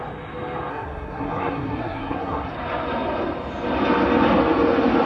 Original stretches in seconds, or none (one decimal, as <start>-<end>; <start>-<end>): 0.0-0.7; 2.5-5.1